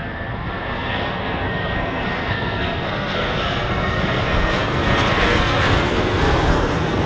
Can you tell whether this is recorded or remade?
remade